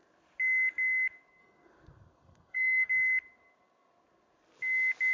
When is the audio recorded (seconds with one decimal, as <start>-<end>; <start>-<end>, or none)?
0.0-1.4; 2.9-5.1